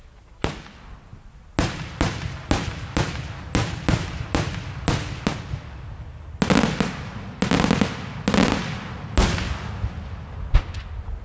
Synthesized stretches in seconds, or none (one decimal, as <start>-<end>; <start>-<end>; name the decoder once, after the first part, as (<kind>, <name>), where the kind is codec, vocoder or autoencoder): none